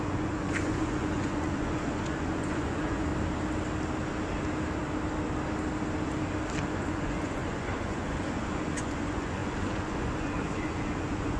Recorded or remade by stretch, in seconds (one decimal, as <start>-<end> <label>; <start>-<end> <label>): 0.0-3.1 remade; 3.1-6.7 recorded; 6.7-11.4 remade